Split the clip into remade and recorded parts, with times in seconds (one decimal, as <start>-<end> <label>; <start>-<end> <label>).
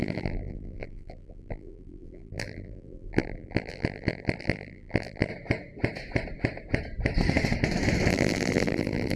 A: 0.0-5.3 remade; 5.3-8.1 recorded; 8.1-9.2 remade